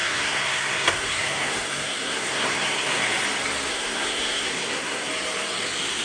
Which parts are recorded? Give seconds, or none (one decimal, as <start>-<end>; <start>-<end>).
3.0-3.7; 5.1-6.0